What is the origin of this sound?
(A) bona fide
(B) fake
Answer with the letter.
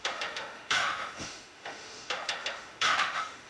B